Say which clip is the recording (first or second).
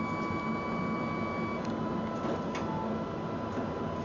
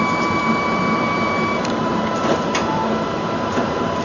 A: first